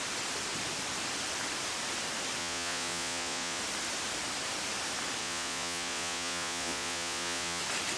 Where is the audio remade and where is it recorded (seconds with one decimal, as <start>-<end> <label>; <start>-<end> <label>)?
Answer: 0.0-2.4 recorded; 2.4-3.6 remade; 3.6-5.2 recorded; 5.2-7.6 remade; 7.6-8.0 recorded